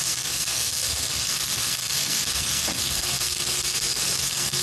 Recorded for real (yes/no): no